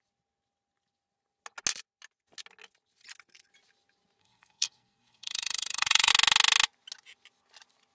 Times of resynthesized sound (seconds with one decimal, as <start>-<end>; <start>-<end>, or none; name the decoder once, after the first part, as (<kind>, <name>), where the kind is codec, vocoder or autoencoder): 4.2-6.1 (codec, SNAC)

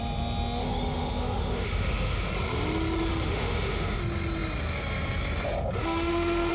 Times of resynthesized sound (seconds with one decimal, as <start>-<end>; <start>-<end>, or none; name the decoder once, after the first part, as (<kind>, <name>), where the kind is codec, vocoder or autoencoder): 0.6-2.3 (autoencoder, DAC-VAE); 3.1-4.0; 5.8-6.5

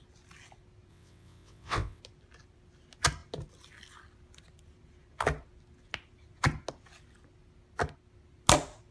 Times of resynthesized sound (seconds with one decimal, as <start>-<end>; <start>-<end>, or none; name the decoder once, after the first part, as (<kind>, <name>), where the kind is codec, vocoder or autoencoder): 0.9-2.0 (vocoder, WaveNeXt)

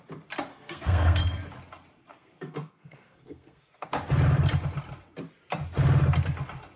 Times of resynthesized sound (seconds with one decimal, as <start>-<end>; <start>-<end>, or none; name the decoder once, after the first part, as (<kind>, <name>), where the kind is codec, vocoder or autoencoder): 0.5-1.2 (codec, SNAC); 2.1-3.9